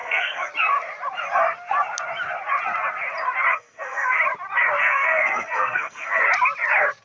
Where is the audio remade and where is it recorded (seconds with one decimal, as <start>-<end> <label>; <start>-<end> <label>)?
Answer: 0.0-0.5 remade; 0.5-3.5 recorded; 3.5-4.2 remade; 4.2-4.8 recorded; 4.8-6.2 remade; 6.2-7.0 recorded